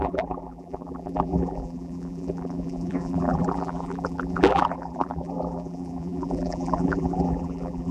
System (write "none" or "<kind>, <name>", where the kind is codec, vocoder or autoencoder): vocoder, BigVGAN v2